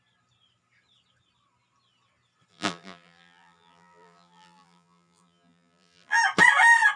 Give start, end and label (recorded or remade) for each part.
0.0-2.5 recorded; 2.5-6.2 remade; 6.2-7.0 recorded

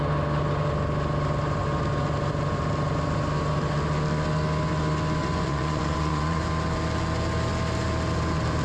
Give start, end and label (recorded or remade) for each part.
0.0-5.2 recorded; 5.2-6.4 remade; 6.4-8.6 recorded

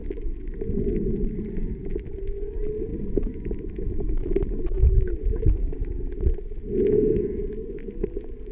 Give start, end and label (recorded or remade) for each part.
0.0-2.9 recorded; 2.9-4.8 remade; 4.8-8.5 recorded